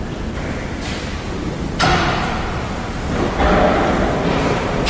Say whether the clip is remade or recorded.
recorded